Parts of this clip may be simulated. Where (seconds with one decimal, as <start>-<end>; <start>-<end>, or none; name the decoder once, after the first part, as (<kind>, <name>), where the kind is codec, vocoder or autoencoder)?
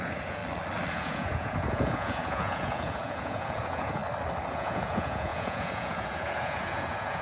0.0-0.4 (vocoder, Vocos); 0.9-4.0; 4.5-7.2